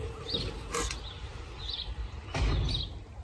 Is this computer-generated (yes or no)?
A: no